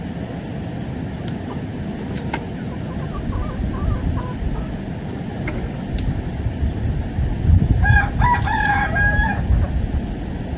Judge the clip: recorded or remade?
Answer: recorded